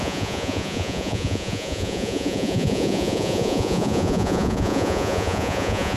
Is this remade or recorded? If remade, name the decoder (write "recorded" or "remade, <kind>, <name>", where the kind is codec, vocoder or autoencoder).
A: remade, vocoder, Vocos